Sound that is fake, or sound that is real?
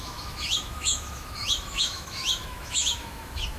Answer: fake